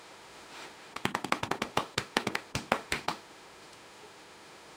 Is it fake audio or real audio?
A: fake